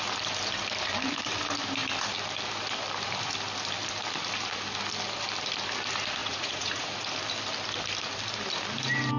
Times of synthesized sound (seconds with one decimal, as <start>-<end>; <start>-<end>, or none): 6.2-7.1